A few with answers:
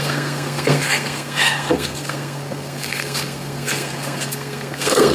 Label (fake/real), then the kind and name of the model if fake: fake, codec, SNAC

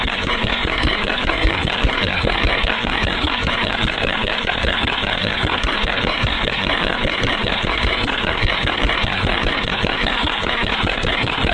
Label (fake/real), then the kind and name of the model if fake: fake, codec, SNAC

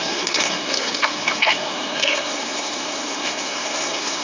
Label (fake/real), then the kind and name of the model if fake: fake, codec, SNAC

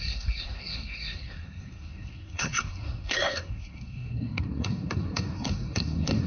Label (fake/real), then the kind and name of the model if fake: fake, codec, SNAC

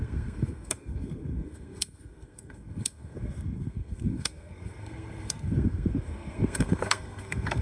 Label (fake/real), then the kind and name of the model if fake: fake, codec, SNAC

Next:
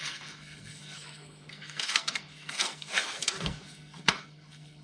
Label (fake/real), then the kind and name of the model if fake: fake, codec, SNAC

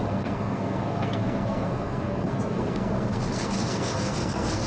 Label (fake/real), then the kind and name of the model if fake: fake, codec, SNAC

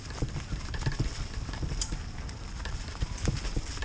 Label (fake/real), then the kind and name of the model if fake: real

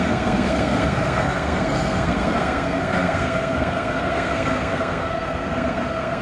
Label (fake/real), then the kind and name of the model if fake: fake, codec, SNAC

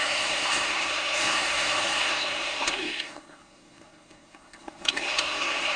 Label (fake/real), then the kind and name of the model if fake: fake, codec, SNAC